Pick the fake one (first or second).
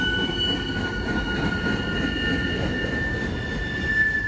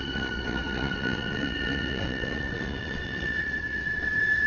second